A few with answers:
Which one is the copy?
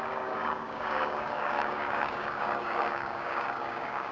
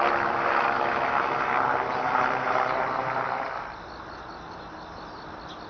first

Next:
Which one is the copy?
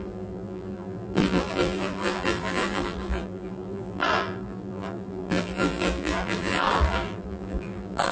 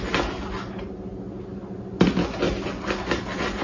first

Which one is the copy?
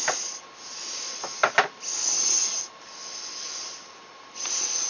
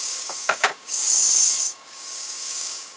second